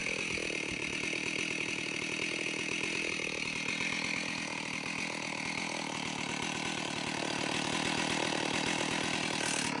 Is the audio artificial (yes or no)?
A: no